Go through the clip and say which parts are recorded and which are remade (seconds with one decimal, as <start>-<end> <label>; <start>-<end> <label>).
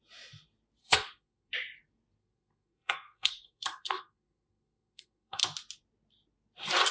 0.0-0.8 recorded; 0.8-1.5 remade; 1.5-2.2 recorded; 2.2-5.4 remade; 5.4-6.9 recorded